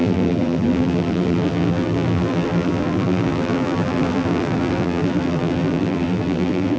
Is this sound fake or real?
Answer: fake